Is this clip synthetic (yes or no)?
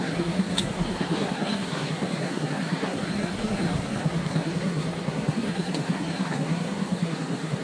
yes